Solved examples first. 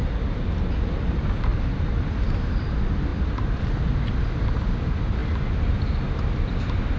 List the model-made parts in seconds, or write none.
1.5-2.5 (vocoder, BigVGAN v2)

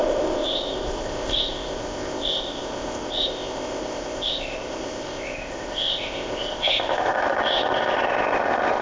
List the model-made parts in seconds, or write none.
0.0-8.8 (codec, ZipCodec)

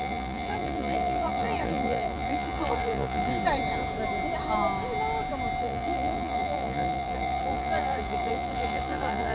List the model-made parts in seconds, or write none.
0.0-3.3 (vocoder, Vocos); 5.6-9.3